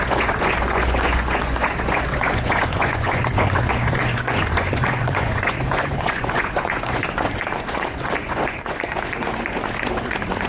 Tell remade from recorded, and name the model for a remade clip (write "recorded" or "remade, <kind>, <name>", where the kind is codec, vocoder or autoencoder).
remade, vocoder, Vocos